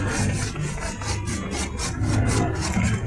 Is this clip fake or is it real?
real